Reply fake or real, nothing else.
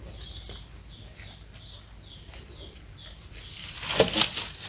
real